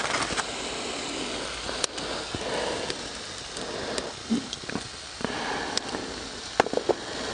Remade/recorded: recorded